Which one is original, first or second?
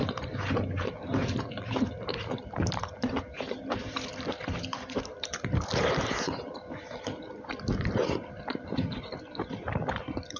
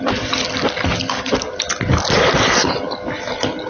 second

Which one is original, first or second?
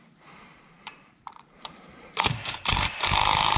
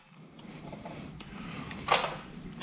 second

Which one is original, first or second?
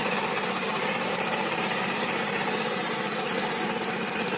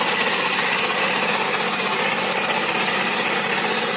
second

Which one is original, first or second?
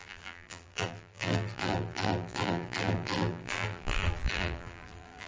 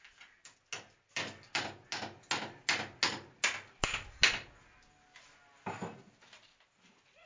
second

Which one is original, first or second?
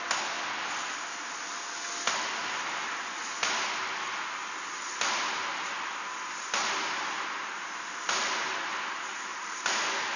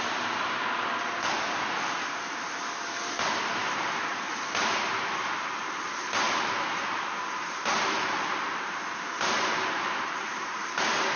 first